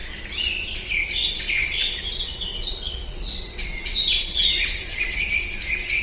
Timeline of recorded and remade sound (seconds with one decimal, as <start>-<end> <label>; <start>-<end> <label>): 0.0-1.6 recorded; 1.6-5.2 remade; 5.2-6.0 recorded